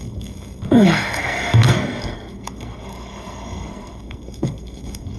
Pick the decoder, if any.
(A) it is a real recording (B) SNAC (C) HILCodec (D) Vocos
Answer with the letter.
B